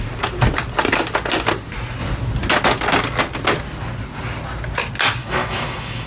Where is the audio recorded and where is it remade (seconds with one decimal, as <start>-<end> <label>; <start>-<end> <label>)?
0.0-5.2 recorded; 5.2-6.1 remade